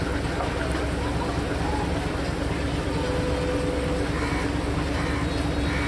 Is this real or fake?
real